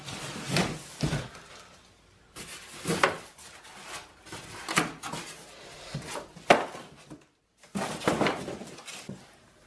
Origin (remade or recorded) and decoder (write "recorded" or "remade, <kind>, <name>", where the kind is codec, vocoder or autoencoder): recorded